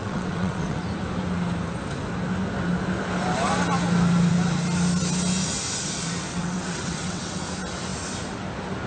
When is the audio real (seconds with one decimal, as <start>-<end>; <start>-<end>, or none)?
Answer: 0.8-6.3; 7.4-8.9